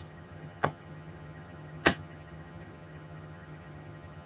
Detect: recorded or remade remade